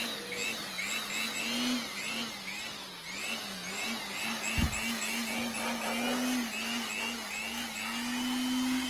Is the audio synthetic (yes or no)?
no